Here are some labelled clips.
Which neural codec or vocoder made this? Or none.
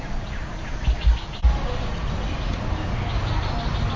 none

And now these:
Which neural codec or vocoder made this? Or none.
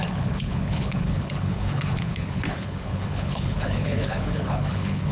codec, HILCodec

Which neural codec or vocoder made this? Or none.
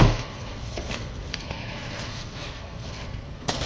codec, SNAC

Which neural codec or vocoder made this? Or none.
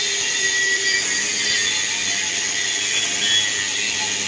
none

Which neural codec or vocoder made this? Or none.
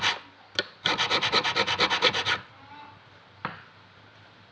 none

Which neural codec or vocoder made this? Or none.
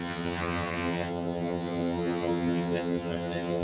vocoder, HiFi-GAN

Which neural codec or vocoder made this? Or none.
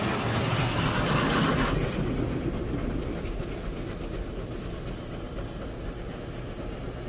none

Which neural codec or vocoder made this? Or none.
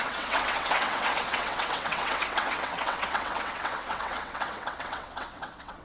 vocoder, WaveNeXt